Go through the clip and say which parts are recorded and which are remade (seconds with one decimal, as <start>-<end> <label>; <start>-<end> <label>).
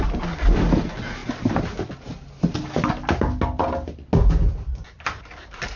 0.0-5.8 recorded